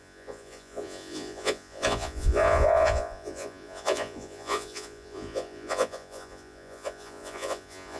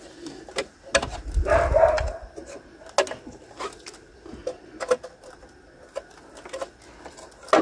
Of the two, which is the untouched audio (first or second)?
second